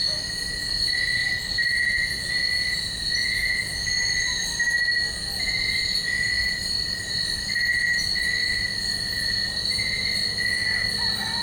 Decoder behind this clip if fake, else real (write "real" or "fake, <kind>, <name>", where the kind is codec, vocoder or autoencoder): real